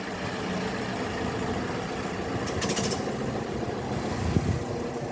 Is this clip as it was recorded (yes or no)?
yes